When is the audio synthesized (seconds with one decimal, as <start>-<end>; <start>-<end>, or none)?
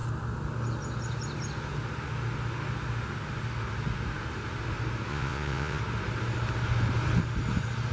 5.1-5.8